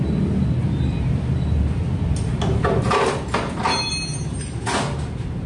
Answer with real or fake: real